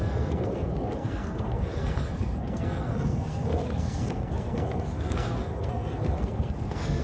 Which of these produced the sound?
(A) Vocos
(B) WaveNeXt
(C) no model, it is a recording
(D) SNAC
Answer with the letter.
D